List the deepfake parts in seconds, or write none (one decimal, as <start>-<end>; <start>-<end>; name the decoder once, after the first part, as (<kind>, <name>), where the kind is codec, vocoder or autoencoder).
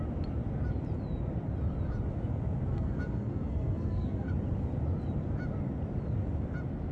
2.7-4.3 (codec, SNAC)